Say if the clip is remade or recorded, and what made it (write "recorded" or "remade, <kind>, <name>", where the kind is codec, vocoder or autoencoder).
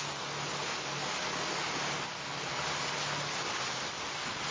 recorded